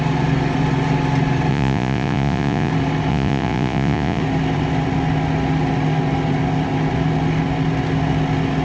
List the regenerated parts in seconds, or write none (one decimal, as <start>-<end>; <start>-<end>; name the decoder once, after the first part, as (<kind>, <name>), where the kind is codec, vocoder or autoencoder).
1.5-2.7 (vocoder, Vocos); 3.1-4.2